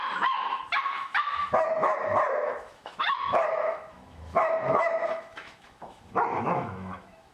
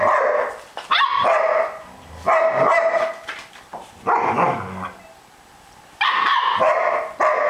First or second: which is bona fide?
second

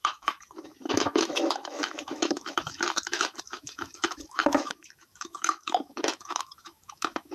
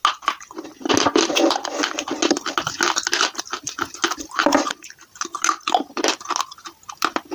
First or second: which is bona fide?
second